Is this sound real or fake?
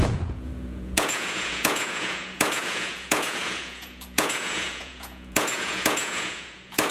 fake